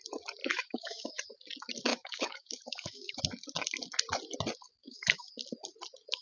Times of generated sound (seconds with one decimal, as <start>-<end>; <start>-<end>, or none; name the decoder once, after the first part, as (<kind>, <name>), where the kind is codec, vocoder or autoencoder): 0.4-1.2 (autoencoder, DAC-VAE); 1.9-3.2; 4.8-5.3